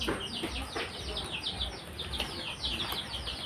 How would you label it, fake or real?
real